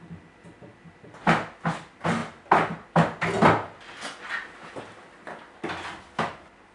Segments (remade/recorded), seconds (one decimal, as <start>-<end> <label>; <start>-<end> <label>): 0.0-6.7 recorded